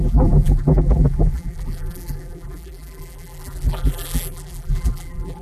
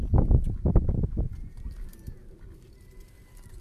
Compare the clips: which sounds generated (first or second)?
first